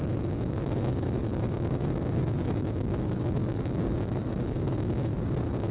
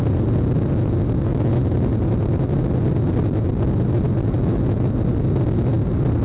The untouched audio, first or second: second